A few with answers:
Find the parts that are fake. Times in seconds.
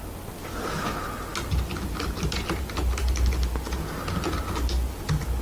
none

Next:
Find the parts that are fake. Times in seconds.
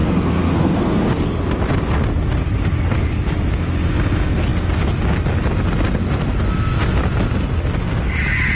0.0-1.0 (codec, SNAC)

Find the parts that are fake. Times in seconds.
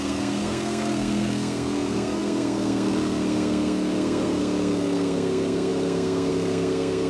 0.0-7.1 (codec, SNAC)